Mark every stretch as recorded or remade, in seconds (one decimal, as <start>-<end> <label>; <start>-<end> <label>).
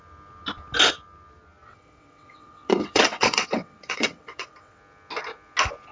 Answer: 0.0-1.7 recorded; 1.7-4.8 remade; 4.8-5.9 recorded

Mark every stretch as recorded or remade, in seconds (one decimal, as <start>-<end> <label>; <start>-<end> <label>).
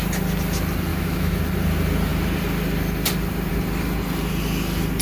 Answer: 0.0-0.9 recorded; 0.9-1.4 remade; 1.4-5.0 recorded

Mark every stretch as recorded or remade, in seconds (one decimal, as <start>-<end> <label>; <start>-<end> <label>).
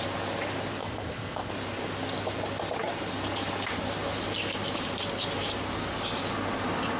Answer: 0.0-0.8 recorded; 0.8-1.5 remade; 1.5-7.0 recorded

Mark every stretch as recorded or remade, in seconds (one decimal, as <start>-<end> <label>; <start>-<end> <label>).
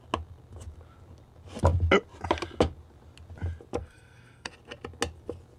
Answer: 0.0-3.8 recorded; 3.8-4.5 remade; 4.5-5.6 recorded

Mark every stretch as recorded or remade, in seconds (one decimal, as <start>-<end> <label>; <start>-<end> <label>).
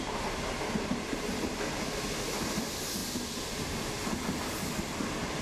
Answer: 0.0-5.4 recorded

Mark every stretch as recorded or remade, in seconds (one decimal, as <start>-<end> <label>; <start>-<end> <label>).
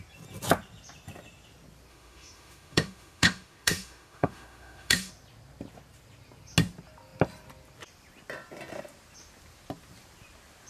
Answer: 0.0-1.9 recorded; 1.9-5.1 remade; 5.1-10.7 recorded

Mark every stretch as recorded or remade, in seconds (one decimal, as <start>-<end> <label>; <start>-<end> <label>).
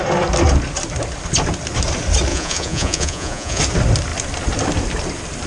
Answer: 0.0-2.3 recorded; 2.3-3.6 remade; 3.6-5.5 recorded